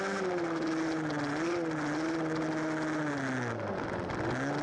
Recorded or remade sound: recorded